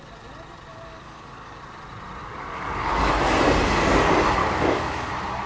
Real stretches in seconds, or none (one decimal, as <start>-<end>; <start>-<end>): 0.0-0.7; 1.6-2.2; 3.1-4.4; 5.1-5.5